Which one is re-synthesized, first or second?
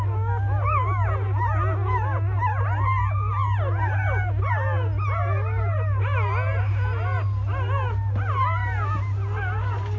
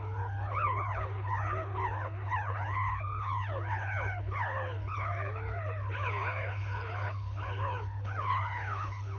second